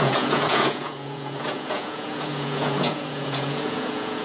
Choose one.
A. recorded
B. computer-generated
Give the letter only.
B